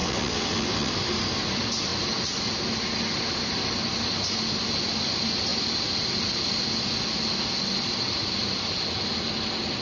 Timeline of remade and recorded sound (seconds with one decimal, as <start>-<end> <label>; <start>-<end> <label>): 0.0-0.9 remade; 0.9-9.8 recorded